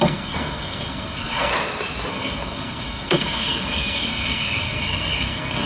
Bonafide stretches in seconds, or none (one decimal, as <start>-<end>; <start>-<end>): 1.5-2.1

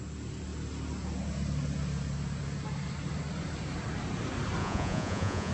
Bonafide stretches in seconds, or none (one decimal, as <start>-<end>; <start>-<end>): 0.0-4.6

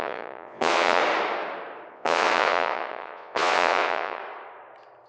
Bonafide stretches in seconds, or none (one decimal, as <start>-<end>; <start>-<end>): 1.0-1.9; 4.2-5.1

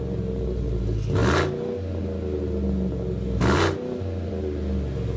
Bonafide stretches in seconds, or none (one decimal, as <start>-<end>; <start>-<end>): 0.0-5.2

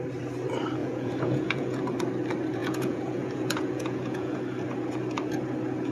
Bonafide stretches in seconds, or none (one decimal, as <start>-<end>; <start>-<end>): 0.0-0.8; 1.8-2.6; 4.4-5.9

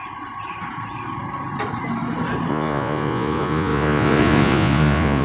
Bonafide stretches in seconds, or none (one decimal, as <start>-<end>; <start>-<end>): 0.0-2.5

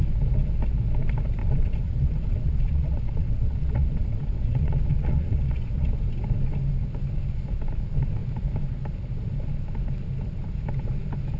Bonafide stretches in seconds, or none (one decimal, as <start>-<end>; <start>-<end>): 0.0-1.4; 6.0-11.4

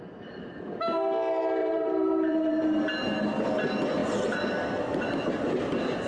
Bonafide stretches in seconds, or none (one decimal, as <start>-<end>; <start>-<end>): 0.0-1.6; 2.8-4.0; 4.5-6.1